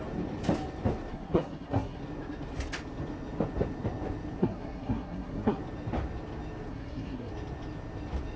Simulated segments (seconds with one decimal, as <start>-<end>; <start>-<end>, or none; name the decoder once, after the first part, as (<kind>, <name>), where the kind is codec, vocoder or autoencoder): 1.1-2.0 (codec, SNAC); 4.4-5.6; 6.7-7.3